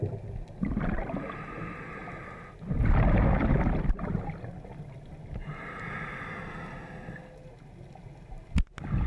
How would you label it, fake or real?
real